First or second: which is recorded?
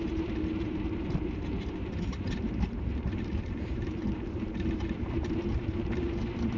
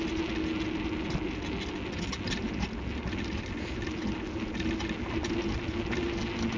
second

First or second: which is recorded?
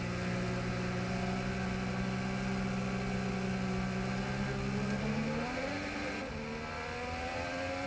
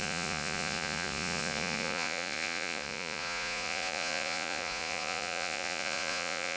first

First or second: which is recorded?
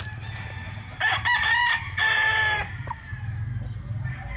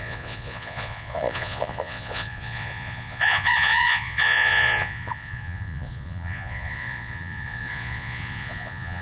first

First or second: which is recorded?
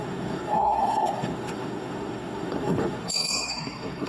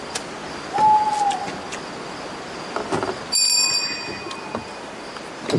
second